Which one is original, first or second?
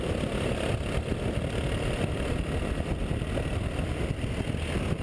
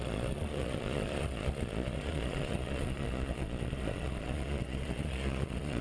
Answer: first